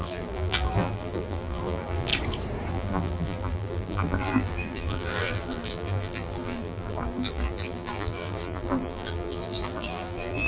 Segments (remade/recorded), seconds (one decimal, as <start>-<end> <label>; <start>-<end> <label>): 0.0-2.1 remade; 2.1-2.7 recorded; 2.7-10.5 remade